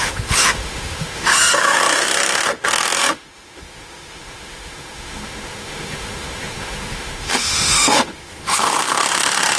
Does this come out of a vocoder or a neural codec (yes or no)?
yes